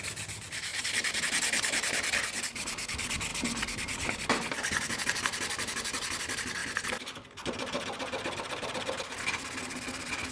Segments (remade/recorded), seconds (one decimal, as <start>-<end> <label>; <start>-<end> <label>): 0.0-10.3 recorded